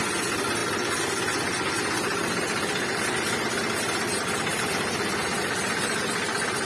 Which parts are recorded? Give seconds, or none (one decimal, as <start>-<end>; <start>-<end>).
0.0-6.6